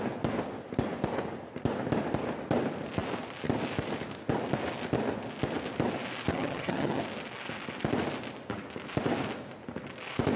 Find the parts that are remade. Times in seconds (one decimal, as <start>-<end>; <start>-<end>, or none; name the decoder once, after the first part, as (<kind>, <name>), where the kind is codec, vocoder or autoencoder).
6.3-7.0 (vocoder, HiFi-GAN)